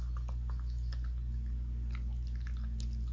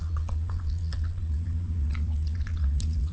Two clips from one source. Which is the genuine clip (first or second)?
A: first